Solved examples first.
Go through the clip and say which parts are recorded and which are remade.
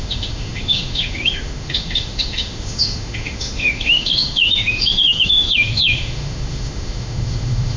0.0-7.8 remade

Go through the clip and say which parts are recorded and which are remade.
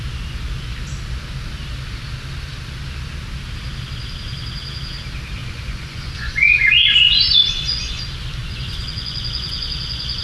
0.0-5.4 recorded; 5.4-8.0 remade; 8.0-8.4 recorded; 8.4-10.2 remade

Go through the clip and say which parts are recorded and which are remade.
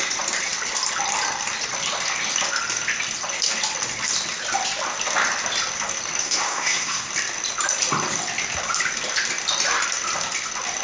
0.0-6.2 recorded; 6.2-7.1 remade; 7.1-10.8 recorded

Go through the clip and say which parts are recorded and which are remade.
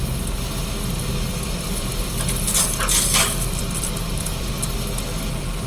0.0-1.1 recorded; 1.1-4.5 remade; 4.5-5.7 recorded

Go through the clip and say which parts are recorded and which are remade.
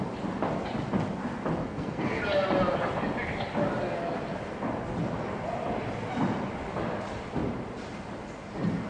0.0-1.6 recorded; 1.6-2.2 remade; 2.2-8.9 recorded